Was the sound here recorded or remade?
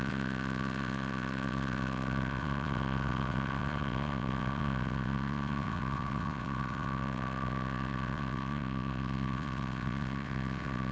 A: remade